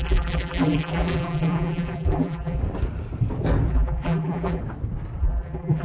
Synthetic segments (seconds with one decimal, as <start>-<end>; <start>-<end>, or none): 0.0-2.6; 3.7-4.6; 5.2-5.8